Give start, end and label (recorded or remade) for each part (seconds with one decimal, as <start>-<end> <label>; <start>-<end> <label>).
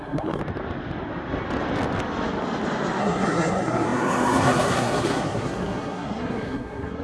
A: 0.0-0.4 remade; 0.4-3.0 recorded; 3.0-7.0 remade